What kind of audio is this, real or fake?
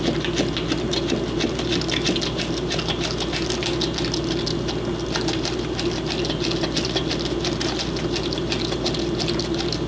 real